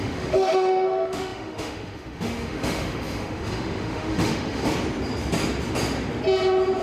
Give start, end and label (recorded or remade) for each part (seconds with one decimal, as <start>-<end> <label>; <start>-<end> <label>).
0.0-4.6 remade; 4.6-6.8 recorded